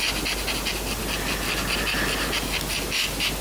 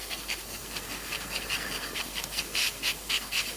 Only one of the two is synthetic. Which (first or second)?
second